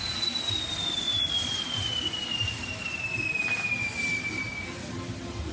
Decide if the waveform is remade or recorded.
recorded